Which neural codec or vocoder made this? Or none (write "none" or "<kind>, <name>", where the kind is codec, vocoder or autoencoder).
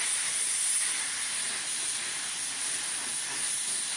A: none